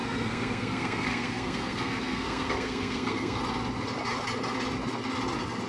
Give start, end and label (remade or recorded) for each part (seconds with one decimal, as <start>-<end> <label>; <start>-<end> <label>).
0.0-3.4 remade; 3.4-5.7 recorded